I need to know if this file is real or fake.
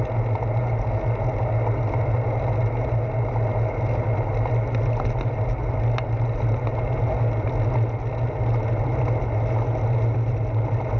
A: real